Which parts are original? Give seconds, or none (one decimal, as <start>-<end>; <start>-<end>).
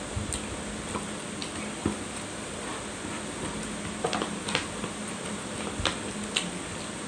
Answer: 0.0-7.1